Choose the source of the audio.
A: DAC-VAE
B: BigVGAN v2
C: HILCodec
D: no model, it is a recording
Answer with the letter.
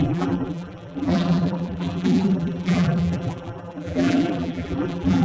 B